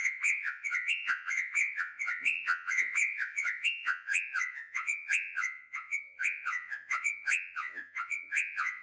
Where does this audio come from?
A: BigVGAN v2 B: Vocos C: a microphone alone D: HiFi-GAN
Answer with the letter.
B